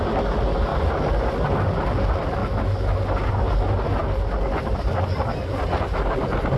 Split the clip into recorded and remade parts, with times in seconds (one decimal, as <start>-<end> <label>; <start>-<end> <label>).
0.0-6.6 recorded